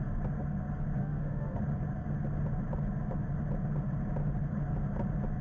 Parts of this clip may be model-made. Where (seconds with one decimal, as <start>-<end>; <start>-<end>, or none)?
1.0-1.6